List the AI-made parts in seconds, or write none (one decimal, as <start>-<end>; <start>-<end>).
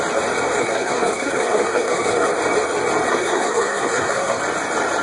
0.6-2.3; 3.1-4.4